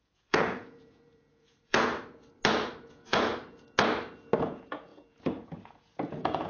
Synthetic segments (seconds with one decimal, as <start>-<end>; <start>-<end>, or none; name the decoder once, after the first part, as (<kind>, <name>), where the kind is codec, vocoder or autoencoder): 0.0-1.9 (vocoder, Vocos); 2.9-3.3; 4.4-6.5